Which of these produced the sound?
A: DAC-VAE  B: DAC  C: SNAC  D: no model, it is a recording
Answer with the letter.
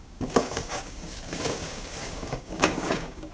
B